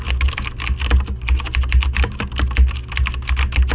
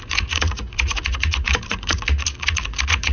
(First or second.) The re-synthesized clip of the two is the second